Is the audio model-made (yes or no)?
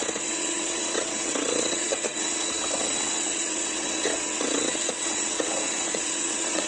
yes